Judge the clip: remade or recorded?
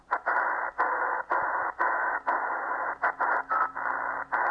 recorded